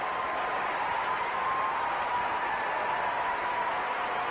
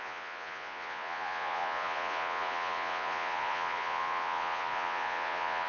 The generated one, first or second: second